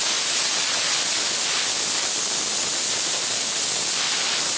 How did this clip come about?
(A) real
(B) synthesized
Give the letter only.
A